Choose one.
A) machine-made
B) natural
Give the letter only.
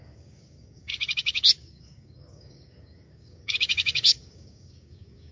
A